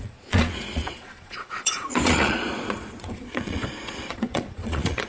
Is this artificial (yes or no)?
yes